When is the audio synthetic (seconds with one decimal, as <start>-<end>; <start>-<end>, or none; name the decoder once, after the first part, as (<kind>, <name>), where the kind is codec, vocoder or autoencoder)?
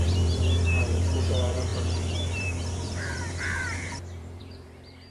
0.0-5.1 (vocoder, BigVGAN v2)